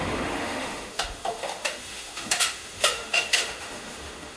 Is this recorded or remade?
remade